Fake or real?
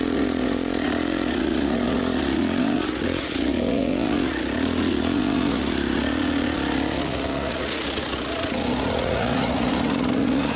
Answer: fake